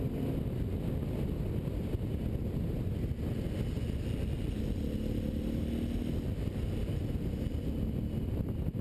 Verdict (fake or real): real